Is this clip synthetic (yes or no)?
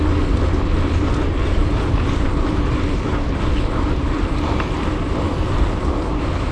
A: no